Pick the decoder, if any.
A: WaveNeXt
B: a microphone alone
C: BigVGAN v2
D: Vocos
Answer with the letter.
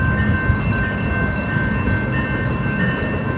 B